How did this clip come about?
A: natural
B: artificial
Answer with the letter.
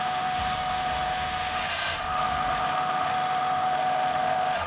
B